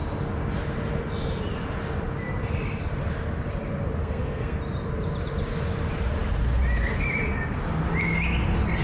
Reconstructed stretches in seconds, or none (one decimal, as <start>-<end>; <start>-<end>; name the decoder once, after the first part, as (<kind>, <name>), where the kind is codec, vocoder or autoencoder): 4.0-4.6 (codec, SNAC)